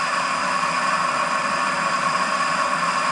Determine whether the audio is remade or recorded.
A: remade